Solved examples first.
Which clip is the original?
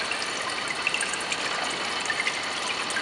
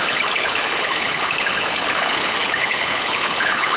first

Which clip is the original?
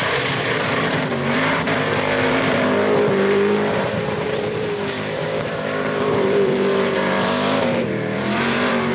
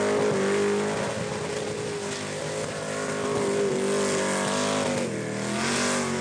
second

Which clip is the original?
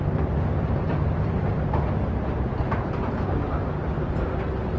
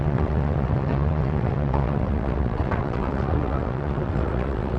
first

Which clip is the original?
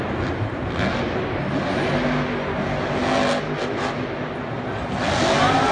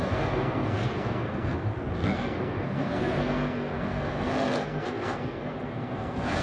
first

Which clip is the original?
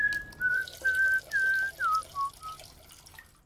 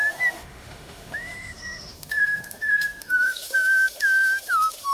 first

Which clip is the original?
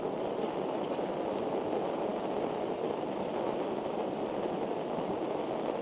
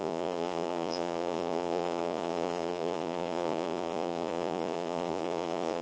first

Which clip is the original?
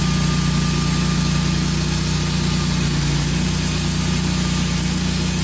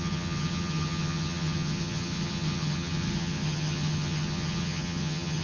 first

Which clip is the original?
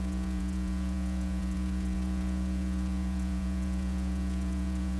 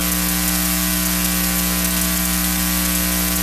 second